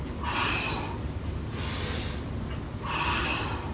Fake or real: real